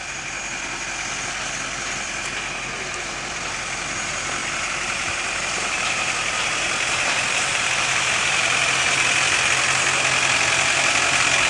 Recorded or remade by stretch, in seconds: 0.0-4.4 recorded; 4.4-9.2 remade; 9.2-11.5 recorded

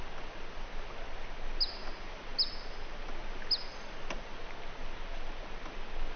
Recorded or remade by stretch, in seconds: 0.0-6.2 recorded

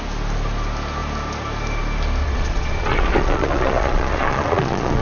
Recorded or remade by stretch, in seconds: 0.0-2.2 recorded; 2.2-5.0 remade

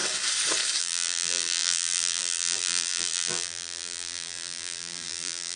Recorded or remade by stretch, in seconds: 0.0-0.8 recorded; 0.8-5.6 remade

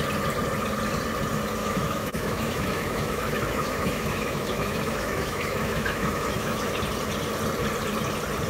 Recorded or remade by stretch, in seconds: 0.0-1.6 recorded; 1.6-6.7 remade; 6.7-8.5 recorded

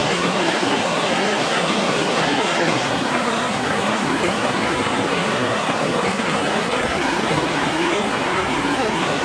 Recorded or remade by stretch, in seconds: 0.0-9.2 remade

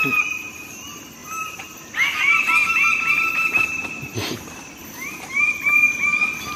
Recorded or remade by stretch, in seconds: 0.0-1.2 recorded; 1.2-2.2 remade; 2.2-2.6 recorded; 2.6-5.4 remade; 5.4-6.6 recorded

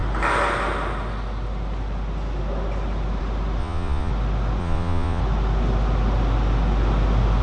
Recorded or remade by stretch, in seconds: 0.0-3.6 recorded; 3.6-4.1 remade; 4.1-4.6 recorded; 4.6-5.2 remade; 5.2-7.4 recorded